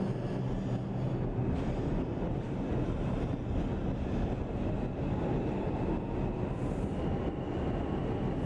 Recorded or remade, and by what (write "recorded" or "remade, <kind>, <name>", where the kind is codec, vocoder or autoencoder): recorded